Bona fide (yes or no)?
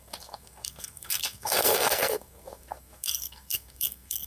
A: no